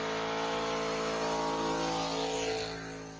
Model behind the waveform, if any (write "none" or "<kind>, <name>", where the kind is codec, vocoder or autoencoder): none